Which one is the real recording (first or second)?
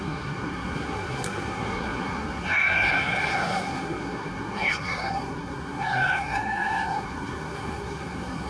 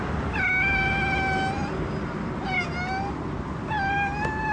second